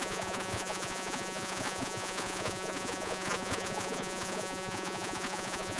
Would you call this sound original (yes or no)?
no